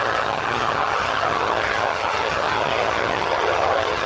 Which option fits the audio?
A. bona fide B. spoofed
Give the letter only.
B